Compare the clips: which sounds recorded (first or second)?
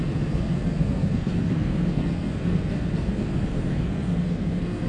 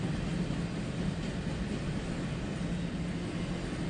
second